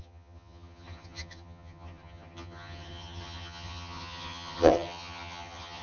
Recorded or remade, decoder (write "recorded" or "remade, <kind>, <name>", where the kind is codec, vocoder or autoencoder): remade, vocoder, HiFi-GAN